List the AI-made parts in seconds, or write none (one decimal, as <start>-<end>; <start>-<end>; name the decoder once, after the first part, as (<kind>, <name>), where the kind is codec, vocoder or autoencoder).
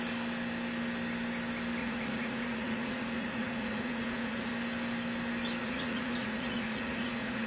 1.8-4.5 (vocoder, Vocos); 5.6-7.5